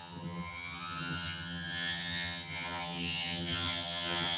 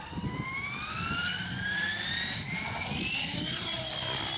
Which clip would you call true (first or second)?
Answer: second